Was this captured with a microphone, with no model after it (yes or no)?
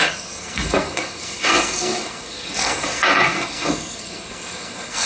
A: no